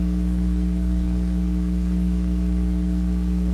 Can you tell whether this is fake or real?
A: fake